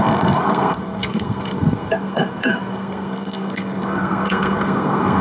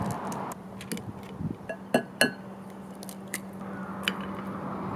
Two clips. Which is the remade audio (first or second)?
first